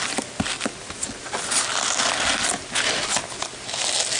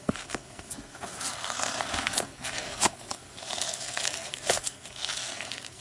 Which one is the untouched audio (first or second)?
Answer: first